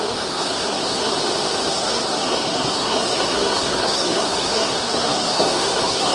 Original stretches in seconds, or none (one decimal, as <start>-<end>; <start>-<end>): 1.1-1.7